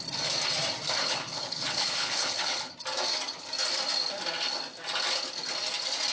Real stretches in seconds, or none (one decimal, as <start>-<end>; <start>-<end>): 0.0-1.0; 2.7-6.1